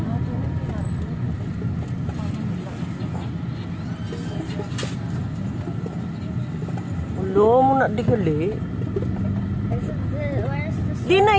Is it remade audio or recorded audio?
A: recorded